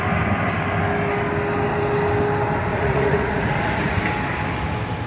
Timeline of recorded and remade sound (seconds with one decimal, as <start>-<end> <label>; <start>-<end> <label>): 0.0-2.7 recorded; 2.7-4.0 remade; 4.0-5.1 recorded